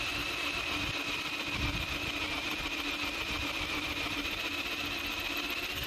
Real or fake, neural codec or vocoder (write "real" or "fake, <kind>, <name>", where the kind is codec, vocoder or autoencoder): real